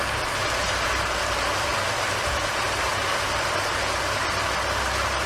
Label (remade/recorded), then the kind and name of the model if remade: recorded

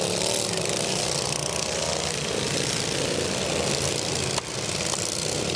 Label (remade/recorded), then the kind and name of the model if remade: recorded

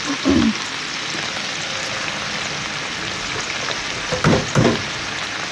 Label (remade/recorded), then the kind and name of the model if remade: recorded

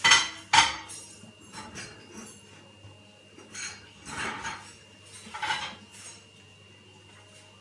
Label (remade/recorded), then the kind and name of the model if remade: recorded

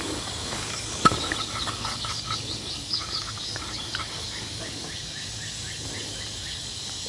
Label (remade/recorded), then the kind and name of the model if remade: remade, codec, DAC